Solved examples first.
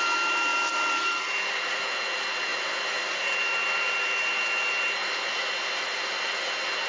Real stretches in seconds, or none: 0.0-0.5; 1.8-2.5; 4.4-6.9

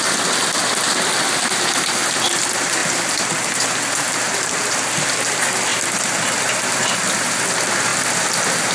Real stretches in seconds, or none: 0.0-2.8; 3.6-5.7; 7.1-8.7

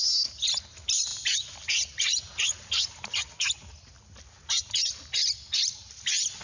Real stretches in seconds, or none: 0.0-6.4

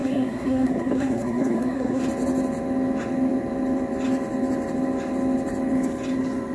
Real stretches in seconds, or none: 2.0-6.5

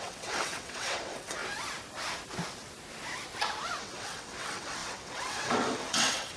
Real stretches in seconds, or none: 1.4-3.8